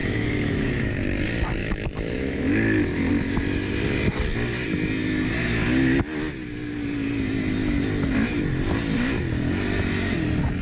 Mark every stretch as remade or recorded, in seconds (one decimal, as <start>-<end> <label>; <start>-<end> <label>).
0.0-0.9 remade; 0.9-1.6 recorded; 1.6-3.1 remade; 3.1-10.6 recorded